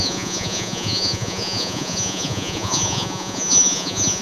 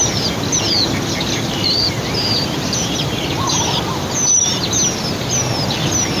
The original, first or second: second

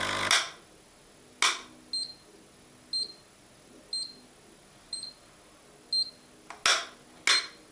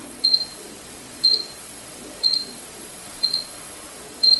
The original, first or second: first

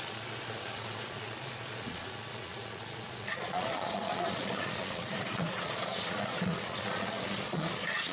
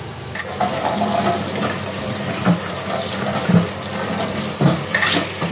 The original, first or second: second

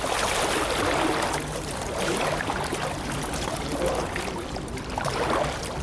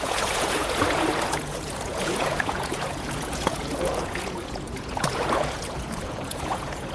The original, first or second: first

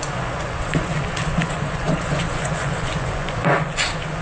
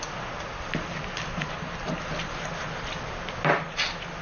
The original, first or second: second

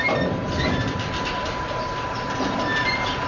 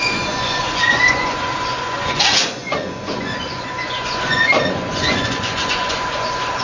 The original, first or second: first